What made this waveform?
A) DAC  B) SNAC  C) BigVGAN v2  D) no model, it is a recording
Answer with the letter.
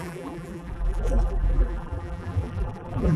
C